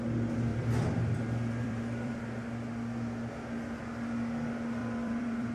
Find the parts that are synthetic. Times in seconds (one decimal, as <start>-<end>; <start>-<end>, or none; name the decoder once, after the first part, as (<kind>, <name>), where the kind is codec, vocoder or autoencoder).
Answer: 0.5-2.1 (vocoder, BigVGAN v2); 4.8-5.5